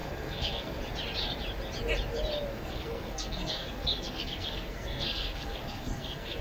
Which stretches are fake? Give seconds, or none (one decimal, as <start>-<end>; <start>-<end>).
0.0-0.8; 2.5-6.4